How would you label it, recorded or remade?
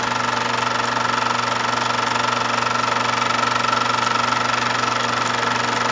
recorded